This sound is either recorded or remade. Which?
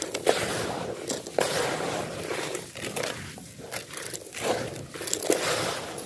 recorded